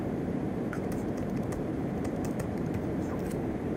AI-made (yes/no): yes